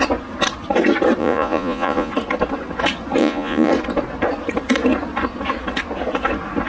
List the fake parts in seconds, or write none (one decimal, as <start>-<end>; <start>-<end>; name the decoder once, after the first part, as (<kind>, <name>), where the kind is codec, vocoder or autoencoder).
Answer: 1.2-2.1 (vocoder, Vocos); 3.2-3.7